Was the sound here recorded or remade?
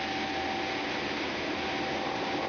recorded